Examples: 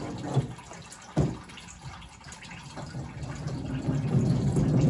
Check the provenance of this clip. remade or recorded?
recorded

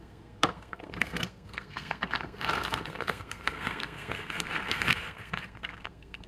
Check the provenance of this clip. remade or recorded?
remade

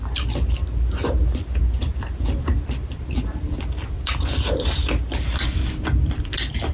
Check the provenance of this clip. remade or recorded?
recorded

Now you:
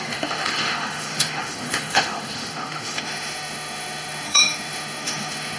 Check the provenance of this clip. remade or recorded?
remade